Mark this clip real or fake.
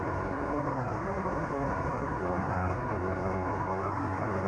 fake